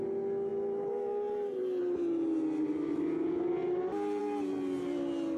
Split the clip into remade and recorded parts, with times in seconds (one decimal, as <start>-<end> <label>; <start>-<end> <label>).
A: 0.0-5.4 recorded